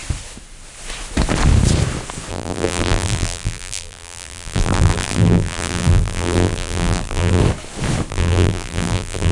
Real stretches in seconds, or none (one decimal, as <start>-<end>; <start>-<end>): 0.0-2.3; 7.4-8.1